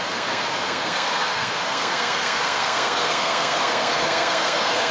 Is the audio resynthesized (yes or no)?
yes